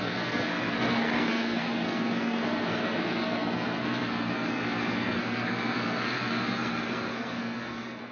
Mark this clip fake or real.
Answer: fake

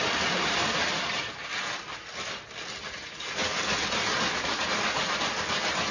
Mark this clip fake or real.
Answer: real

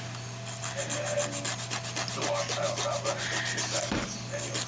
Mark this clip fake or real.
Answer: real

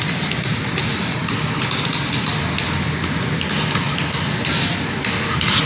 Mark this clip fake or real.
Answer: real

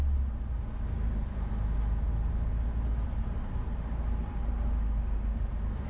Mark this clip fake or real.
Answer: real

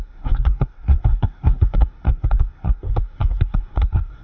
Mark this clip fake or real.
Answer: fake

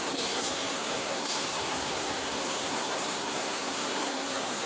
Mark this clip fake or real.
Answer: fake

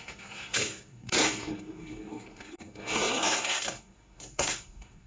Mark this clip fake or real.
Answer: fake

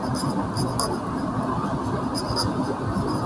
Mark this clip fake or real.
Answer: real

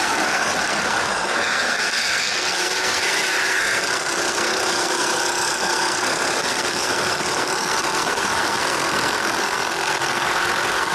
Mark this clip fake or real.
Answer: fake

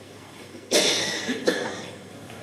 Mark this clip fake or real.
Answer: fake